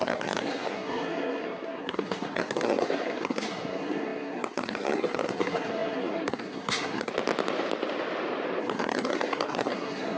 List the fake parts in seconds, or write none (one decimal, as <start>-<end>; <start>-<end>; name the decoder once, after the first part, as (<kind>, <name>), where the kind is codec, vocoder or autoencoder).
0.0-7.1 (codec, SNAC); 8.6-10.2